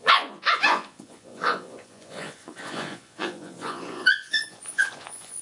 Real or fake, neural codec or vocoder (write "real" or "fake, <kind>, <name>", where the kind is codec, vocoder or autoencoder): fake, vocoder, Vocos